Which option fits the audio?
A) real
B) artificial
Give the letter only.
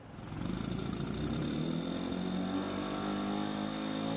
A